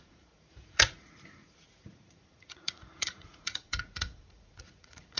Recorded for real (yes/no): no